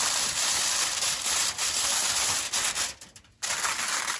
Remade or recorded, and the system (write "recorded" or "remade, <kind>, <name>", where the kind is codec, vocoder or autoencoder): recorded